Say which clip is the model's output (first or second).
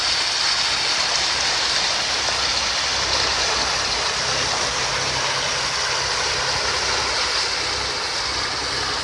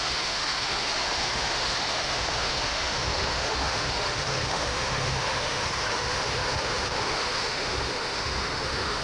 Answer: second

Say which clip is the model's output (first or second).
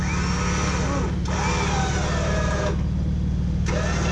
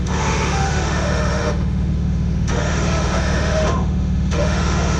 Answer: second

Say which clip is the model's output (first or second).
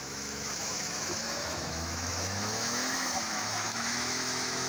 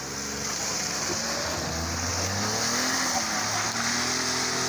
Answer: first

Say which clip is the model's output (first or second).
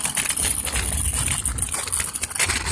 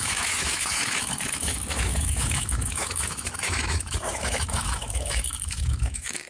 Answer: second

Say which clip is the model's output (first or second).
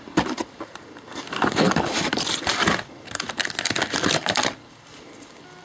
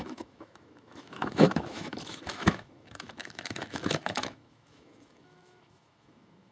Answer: second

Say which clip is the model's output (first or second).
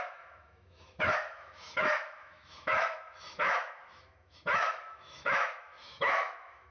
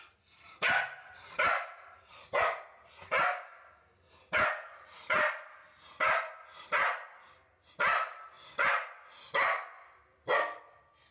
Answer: first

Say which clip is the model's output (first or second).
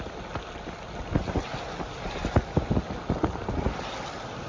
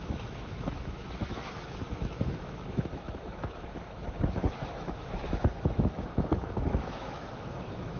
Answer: second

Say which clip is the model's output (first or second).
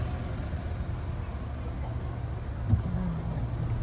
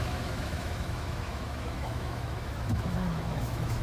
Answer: second